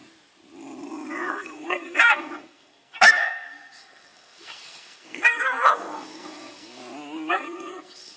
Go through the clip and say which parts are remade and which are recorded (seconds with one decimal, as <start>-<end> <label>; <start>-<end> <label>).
0.0-1.1 recorded; 1.1-6.8 remade; 6.8-7.3 recorded; 7.3-8.2 remade

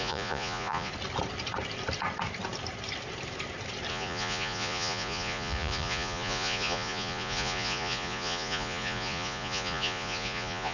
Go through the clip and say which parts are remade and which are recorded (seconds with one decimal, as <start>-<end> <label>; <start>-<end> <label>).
0.0-0.9 remade; 0.9-3.9 recorded; 3.9-10.7 remade

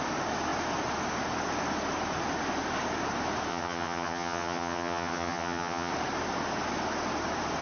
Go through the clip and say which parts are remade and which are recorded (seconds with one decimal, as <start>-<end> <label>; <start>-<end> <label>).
0.0-3.5 recorded; 3.5-5.9 remade; 5.9-7.6 recorded

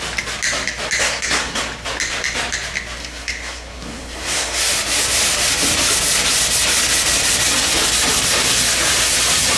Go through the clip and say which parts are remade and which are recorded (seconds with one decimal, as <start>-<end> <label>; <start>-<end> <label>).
0.0-1.0 recorded; 1.0-1.6 remade; 1.6-3.0 recorded; 3.0-4.6 remade; 4.6-9.6 recorded

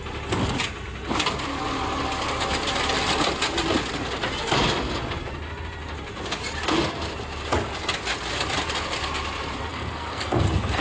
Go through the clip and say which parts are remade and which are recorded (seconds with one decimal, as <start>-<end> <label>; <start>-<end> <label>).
0.0-9.7 recorded; 9.7-10.8 remade

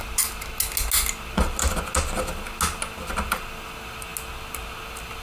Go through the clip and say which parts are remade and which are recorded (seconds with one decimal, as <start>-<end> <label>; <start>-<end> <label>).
0.0-5.2 recorded